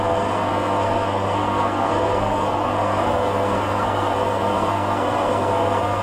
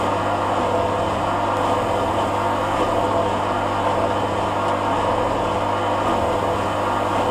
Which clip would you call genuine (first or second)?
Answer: second